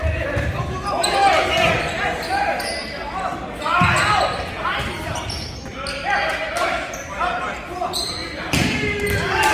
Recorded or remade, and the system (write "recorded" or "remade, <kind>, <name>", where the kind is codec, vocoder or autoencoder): recorded